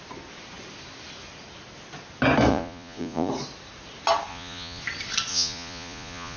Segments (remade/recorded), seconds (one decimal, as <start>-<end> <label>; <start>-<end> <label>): 0.0-2.5 recorded; 2.5-3.3 remade; 3.3-4.3 recorded; 4.3-4.8 remade; 4.8-5.3 recorded; 5.3-6.4 remade